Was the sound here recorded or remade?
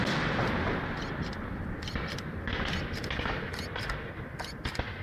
recorded